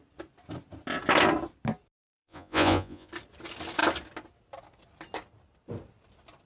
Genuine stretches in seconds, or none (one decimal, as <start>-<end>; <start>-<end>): 0.0-2.0; 3.1-6.5